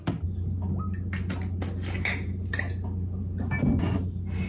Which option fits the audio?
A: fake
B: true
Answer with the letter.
B